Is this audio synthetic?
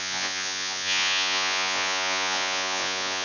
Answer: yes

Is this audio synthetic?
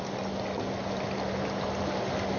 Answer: no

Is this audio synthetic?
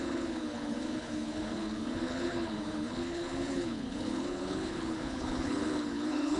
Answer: yes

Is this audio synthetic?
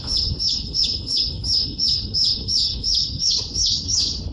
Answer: yes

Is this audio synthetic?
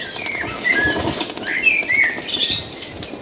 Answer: no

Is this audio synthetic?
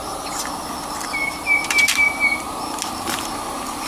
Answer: no